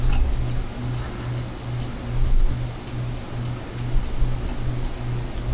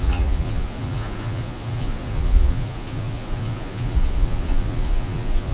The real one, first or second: first